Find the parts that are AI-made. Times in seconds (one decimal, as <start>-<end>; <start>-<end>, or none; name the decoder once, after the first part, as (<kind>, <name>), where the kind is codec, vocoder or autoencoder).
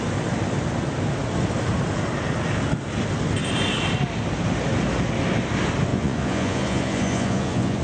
5.9-7.8 (vocoder, Vocos)